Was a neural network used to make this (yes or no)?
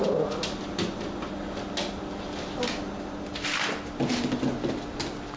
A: no